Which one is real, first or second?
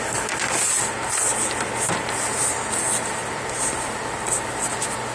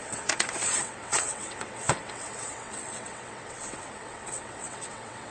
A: first